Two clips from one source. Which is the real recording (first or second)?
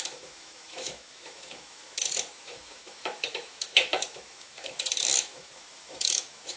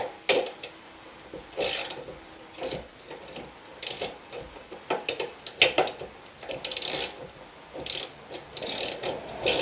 second